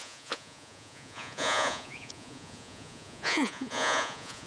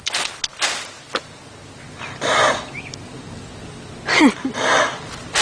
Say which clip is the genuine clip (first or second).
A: second